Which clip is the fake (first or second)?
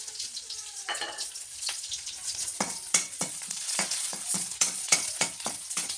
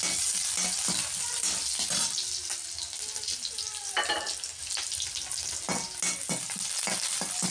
first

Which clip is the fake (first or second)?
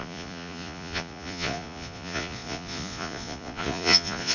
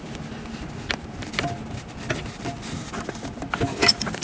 first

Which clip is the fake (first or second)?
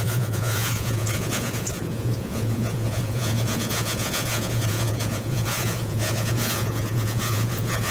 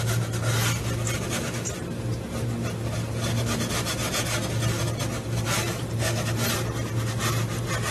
first